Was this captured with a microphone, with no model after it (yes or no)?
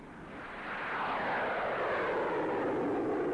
yes